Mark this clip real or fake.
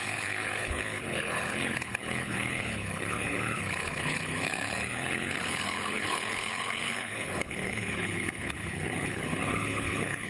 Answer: fake